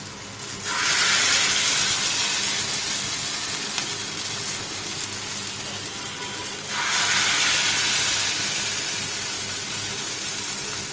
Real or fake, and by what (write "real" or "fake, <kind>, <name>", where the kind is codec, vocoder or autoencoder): real